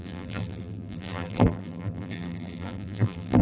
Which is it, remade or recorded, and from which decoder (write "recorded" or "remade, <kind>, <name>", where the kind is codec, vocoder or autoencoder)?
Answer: remade, vocoder, BigVGAN v2